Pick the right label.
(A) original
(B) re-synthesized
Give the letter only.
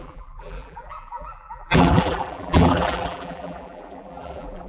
B